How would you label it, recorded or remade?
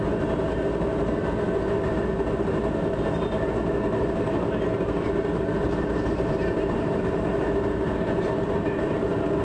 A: recorded